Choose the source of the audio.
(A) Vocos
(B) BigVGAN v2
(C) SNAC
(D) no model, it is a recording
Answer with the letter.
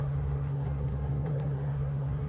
C